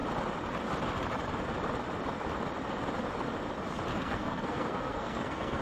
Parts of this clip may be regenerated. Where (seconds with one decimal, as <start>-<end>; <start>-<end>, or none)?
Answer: 3.9-5.6

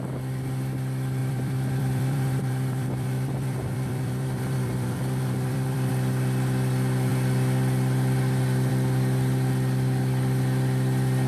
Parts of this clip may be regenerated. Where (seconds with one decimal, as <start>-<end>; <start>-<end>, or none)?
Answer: 1.2-5.9

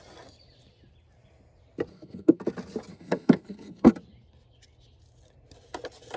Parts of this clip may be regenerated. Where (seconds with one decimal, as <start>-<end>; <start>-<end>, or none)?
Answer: 1.9-2.4; 2.9-3.9

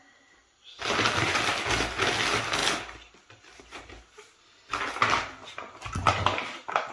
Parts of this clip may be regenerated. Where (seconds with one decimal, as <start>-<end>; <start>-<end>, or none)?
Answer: none

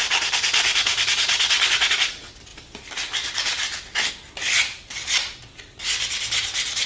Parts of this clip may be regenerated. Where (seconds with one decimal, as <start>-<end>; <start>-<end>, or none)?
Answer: none